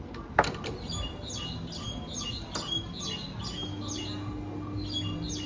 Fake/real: real